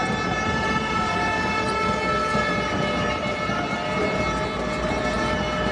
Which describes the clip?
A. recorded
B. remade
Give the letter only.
A